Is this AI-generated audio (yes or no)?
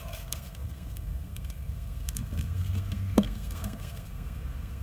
yes